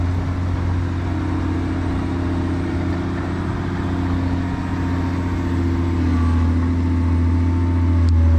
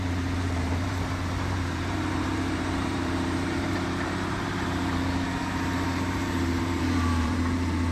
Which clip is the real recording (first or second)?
first